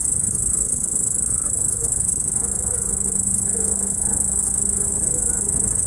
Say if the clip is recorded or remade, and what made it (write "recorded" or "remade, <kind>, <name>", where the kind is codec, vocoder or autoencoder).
remade, codec, SNAC